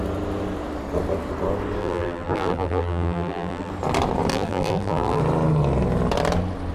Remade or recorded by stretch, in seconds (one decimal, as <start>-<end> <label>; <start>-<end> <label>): 0.0-1.8 recorded; 1.8-3.7 remade; 3.7-4.3 recorded; 4.3-5.2 remade; 5.2-6.7 recorded